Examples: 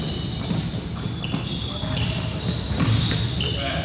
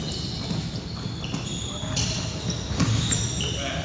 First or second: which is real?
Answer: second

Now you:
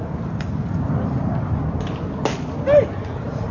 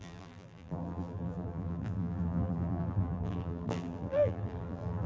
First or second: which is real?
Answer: first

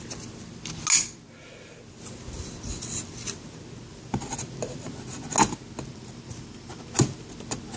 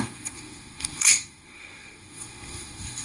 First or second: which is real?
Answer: first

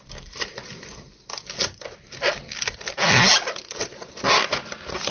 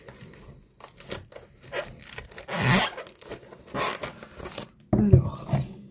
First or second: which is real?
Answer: second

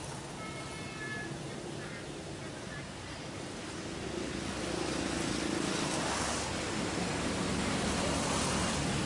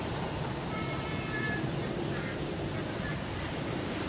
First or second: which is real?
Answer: first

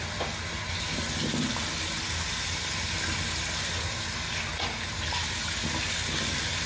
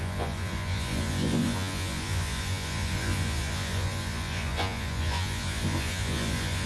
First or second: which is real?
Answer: first